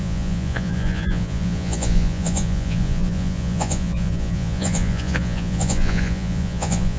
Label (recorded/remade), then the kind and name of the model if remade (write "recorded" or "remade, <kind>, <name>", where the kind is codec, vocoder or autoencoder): remade, vocoder, Vocos